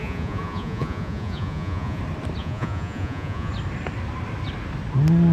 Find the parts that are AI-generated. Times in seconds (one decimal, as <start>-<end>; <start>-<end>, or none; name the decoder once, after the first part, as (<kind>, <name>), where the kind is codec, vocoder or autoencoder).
0.0-2.0 (vocoder, Vocos); 2.4-3.5